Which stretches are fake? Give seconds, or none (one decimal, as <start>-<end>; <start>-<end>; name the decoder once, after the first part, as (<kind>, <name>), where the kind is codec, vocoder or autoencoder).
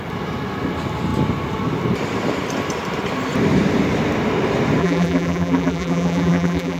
4.8-6.8 (vocoder, BigVGAN v2)